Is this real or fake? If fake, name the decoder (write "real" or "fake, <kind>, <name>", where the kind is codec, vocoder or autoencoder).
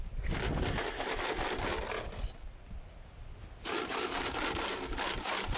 real